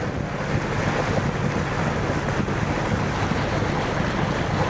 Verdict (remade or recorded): recorded